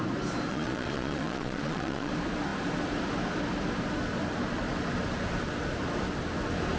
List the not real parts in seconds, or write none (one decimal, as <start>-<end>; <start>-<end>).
0.5-2.1